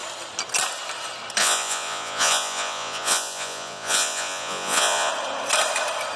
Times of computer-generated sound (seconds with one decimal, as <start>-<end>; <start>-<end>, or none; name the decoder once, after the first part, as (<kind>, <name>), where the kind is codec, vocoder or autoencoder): 1.4-5.1 (vocoder, Vocos)